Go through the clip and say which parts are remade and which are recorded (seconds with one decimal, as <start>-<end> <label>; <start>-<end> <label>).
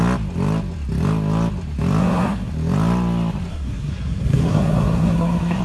0.0-2.0 recorded; 2.0-2.5 remade; 2.5-3.5 recorded; 3.5-5.6 remade